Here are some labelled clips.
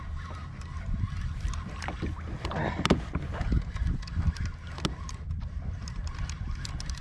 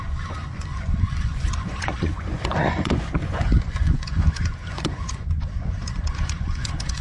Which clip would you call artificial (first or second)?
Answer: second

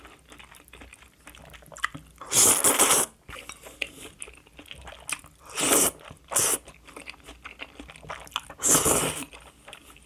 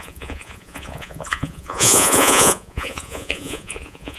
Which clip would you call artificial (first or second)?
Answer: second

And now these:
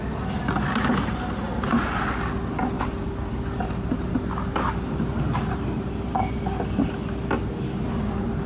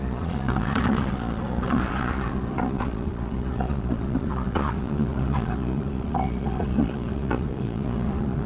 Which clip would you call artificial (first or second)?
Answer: second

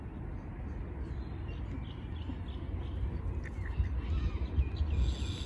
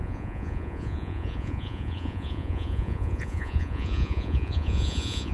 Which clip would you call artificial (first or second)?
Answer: second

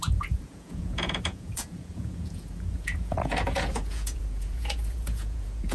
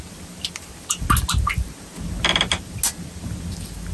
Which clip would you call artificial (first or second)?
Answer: first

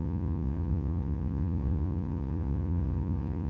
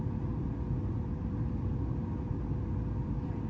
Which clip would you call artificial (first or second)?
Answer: first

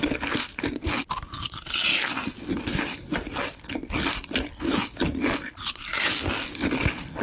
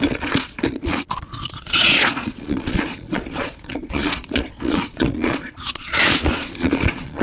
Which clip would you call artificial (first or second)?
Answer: second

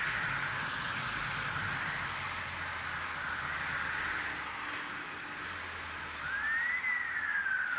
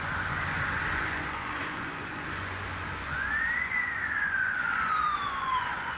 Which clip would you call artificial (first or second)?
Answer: second